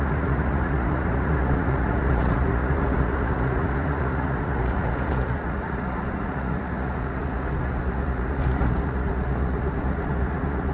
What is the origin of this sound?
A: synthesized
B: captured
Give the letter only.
A